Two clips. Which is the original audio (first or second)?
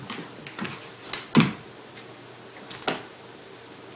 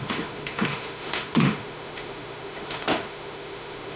first